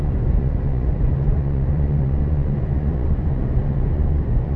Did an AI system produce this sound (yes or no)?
yes